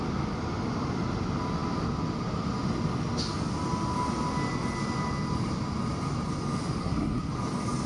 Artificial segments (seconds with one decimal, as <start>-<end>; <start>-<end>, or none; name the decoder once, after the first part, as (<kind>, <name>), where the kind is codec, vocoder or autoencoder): 6.8-7.3 (codec, SNAC)